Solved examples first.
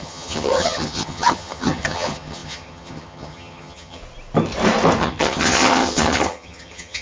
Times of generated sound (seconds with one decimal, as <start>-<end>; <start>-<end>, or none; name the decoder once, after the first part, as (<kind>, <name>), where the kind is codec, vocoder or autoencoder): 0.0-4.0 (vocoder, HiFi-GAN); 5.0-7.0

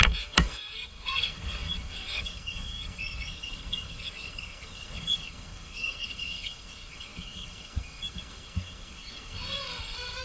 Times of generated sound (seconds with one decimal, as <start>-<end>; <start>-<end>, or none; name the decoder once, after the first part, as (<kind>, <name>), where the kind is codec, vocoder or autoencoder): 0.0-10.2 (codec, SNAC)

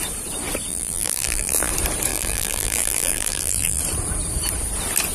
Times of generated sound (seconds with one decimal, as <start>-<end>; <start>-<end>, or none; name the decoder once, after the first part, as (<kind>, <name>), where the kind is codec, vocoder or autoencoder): 0.7-1.7 (vocoder, BigVGAN v2); 2.1-3.8

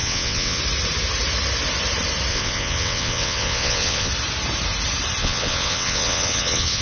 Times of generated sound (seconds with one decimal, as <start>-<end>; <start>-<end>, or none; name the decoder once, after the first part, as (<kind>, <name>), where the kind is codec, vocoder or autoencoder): 0.0-0.6 (vocoder, WaveNeXt); 2.3-4.1; 5.2-6.8

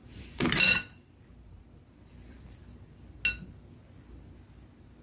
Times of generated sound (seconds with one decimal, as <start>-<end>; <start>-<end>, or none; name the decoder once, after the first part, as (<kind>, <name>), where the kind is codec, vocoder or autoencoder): 0.0-2.6 (vocoder, BigVGAN v2)

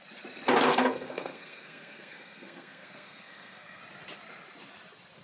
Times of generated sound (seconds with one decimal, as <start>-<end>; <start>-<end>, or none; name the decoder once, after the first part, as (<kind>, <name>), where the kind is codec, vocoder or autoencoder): 0.7-3.8 (codec, SNAC)

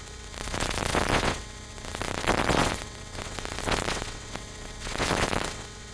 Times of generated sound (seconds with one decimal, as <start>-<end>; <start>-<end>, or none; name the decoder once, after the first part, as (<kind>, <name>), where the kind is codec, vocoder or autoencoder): 0.0-5.9 (vocoder, WaveNeXt)